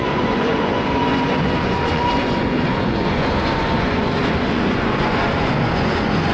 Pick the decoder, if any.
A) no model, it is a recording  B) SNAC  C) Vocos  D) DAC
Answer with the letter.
C